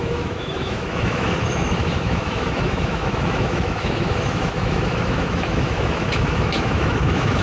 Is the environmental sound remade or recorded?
remade